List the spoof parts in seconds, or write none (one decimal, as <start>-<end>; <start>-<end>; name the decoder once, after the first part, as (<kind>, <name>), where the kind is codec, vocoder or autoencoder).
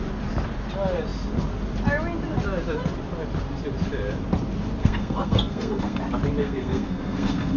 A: 4.8-6.0 (codec, SNAC); 6.4-7.6